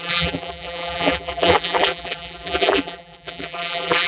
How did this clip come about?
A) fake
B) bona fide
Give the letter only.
A